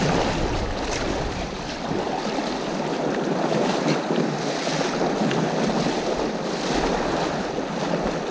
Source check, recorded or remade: recorded